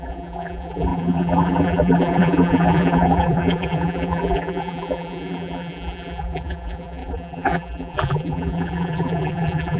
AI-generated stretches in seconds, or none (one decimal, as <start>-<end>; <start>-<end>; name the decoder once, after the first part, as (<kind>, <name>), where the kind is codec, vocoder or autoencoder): 0.0-9.8 (vocoder, BigVGAN v2)